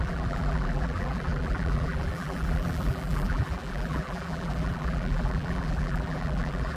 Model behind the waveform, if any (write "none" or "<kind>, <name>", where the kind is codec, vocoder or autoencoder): vocoder, BigVGAN v2